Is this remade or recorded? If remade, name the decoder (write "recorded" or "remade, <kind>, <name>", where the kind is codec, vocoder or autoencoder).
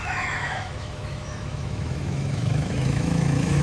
remade, autoencoder, DAC-VAE